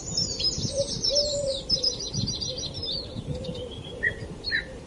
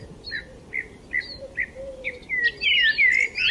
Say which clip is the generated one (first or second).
first